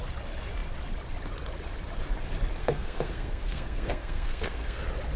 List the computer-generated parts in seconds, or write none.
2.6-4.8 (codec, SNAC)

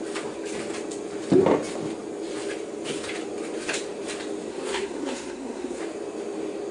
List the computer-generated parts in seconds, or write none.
4.5-5.8 (codec, SNAC)

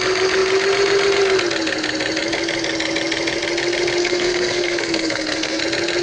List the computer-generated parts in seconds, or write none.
4.0-5.6 (codec, SNAC)

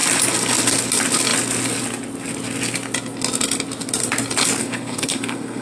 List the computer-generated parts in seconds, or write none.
4.6-5.6 (codec, SNAC)